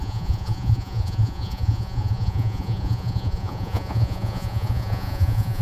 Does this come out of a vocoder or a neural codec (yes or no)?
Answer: yes